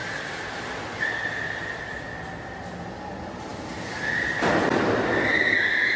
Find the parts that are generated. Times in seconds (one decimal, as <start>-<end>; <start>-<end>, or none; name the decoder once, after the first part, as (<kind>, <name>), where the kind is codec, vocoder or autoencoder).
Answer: none